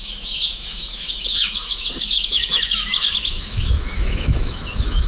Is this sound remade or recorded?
remade